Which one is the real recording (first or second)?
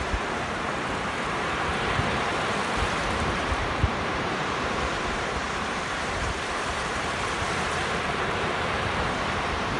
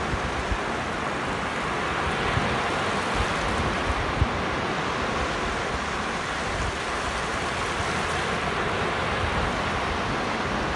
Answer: second